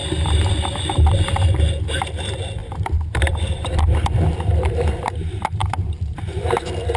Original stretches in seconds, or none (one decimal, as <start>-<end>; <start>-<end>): 0.0-2.6; 4.9-5.6; 6.5-7.0